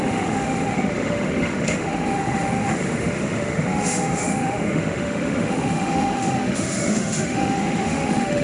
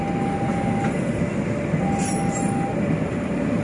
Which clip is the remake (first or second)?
first